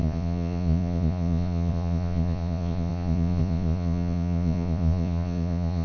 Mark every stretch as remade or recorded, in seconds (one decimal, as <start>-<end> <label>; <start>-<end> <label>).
0.0-5.8 remade